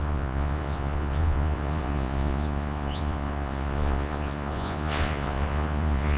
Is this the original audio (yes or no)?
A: no